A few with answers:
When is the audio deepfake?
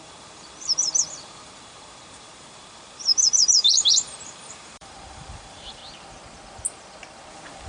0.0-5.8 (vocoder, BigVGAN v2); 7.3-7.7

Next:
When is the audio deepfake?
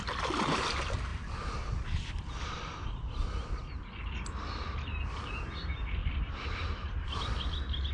6.0-7.2 (vocoder, BigVGAN v2)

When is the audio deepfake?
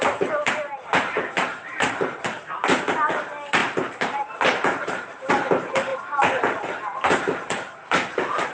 0.4-1.9 (vocoder, BigVGAN v2); 3.6-5.3; 5.9-6.6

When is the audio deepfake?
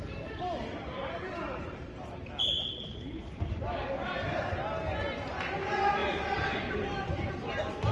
0.0-3.4 (vocoder, BigVGAN v2); 6.0-7.3